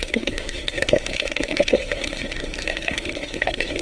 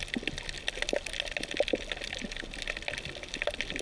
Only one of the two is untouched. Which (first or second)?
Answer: second